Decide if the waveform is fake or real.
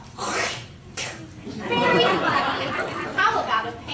fake